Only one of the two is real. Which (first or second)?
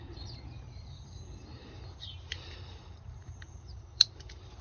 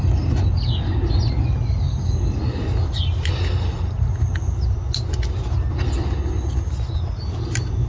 second